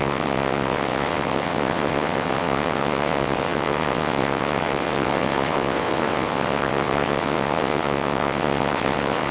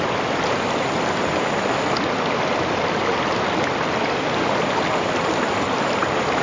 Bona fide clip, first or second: second